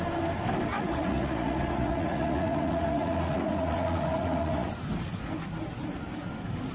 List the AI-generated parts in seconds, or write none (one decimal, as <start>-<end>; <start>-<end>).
0.7-4.7